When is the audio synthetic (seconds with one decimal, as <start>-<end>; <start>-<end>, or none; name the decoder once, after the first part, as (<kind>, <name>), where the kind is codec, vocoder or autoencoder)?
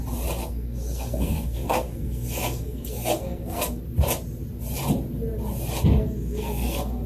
0.4-3.8 (codec, SNAC); 6.0-7.1